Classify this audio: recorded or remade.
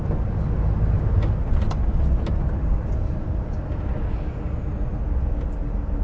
recorded